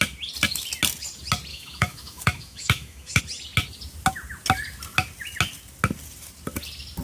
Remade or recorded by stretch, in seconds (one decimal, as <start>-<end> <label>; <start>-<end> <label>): 0.0-1.5 recorded; 1.5-3.2 remade; 3.2-7.0 recorded